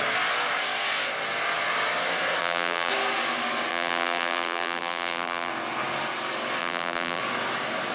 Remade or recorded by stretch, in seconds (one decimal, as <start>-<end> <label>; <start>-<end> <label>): 0.0-2.4 recorded; 2.4-2.9 remade; 2.9-3.7 recorded; 3.7-5.5 remade; 5.5-6.6 recorded; 6.6-7.2 remade; 7.2-7.9 recorded